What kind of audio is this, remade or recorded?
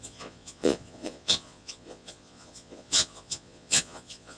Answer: remade